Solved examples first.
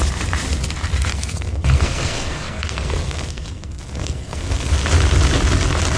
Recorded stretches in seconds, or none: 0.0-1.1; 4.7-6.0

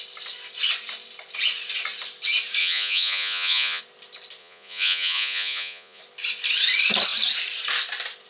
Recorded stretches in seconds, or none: 0.0-2.6; 3.8-4.4; 6.0-8.3

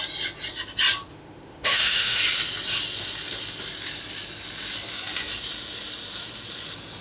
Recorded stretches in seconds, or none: 0.0-1.1; 2.2-7.0

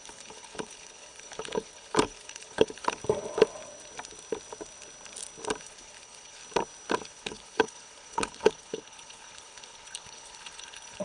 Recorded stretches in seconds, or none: 3.0-5.6; 6.4-7.1

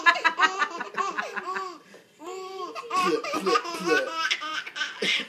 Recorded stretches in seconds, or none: 0.0-5.3

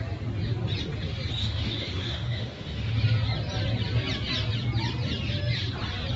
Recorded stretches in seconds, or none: 0.0-1.4; 2.9-6.2

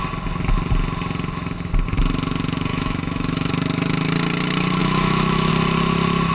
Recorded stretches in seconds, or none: 0.0-2.7; 3.5-4.8; 5.5-6.3

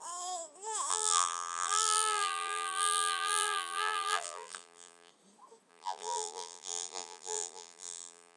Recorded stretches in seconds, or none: 0.0-0.9; 5.1-5.7